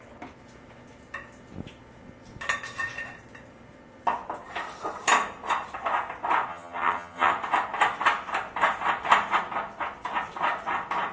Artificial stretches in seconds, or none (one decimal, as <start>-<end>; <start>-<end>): 6.5-7.3